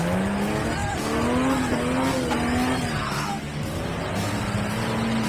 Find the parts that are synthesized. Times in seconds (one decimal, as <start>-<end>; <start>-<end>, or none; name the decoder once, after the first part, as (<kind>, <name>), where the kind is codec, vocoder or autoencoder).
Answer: none